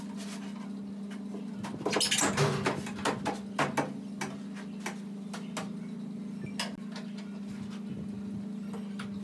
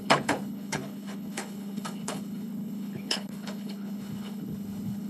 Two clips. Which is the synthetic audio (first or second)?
second